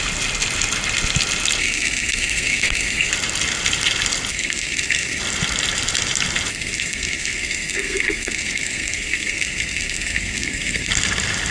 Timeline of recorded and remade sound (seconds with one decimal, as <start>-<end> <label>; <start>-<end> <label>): 0.0-1.6 recorded; 1.6-3.1 remade; 3.1-4.3 recorded; 4.3-5.2 remade; 5.2-6.5 recorded; 6.5-10.9 remade; 10.9-11.5 recorded